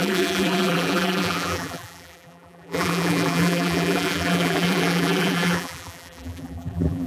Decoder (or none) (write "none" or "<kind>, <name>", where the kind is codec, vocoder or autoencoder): vocoder, BigVGAN v2